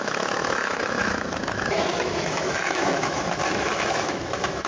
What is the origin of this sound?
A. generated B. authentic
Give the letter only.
A